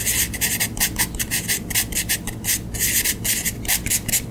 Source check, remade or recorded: recorded